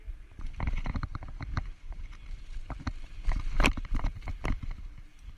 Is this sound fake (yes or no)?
yes